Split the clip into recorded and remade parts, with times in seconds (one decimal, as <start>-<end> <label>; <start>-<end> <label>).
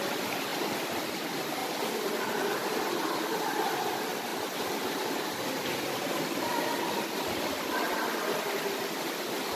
0.0-9.6 recorded